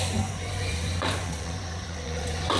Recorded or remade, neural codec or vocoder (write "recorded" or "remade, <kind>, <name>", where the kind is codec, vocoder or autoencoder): remade, vocoder, Vocos